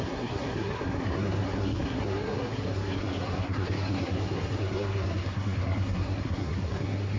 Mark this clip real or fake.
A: fake